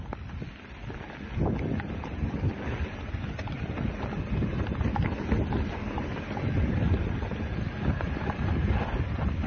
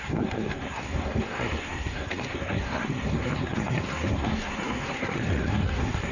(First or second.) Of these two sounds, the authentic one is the first